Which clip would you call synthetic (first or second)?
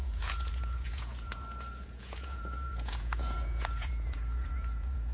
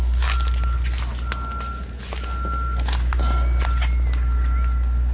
first